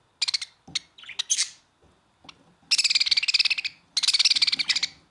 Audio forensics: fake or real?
real